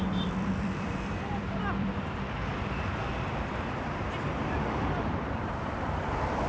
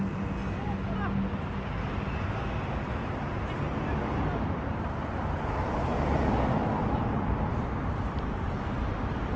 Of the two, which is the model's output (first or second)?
first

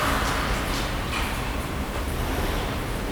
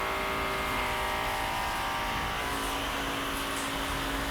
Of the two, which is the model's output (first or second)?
first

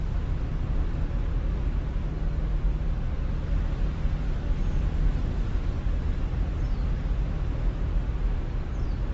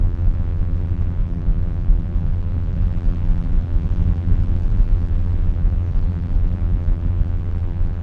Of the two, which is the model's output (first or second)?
second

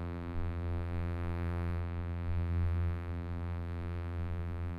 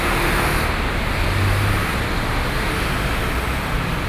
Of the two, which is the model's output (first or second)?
first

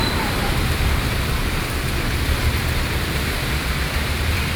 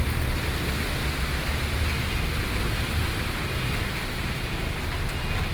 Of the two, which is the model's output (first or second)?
first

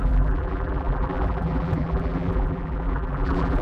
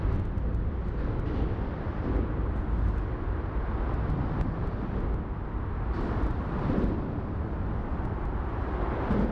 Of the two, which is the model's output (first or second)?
first